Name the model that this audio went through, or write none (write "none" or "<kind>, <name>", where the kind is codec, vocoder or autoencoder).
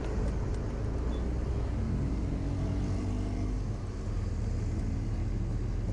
none